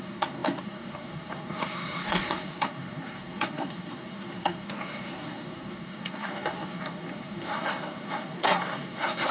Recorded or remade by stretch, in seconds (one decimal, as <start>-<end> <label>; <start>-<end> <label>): 0.0-9.3 remade